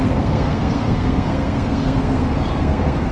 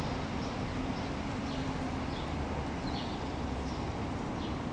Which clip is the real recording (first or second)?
second